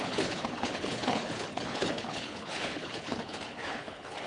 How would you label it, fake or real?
fake